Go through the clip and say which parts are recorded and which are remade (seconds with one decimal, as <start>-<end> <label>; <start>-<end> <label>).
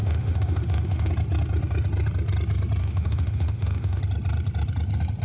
0.0-1.1 remade; 1.1-2.8 recorded; 2.8-4.0 remade; 4.0-5.2 recorded